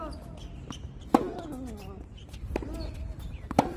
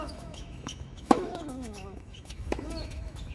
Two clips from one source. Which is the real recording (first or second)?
first